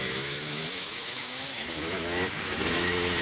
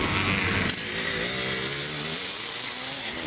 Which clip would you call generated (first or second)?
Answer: first